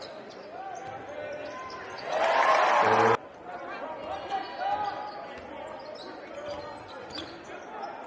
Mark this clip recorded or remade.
recorded